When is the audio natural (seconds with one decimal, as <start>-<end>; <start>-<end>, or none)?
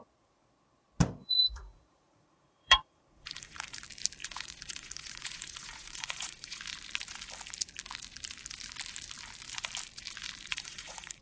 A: 0.0-1.2; 3.8-4.2; 6.6-10.5